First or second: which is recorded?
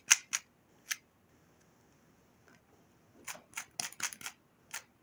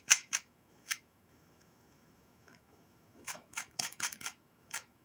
first